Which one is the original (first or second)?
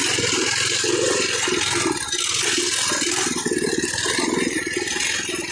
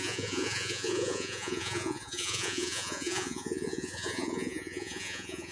first